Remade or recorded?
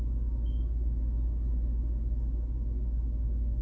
recorded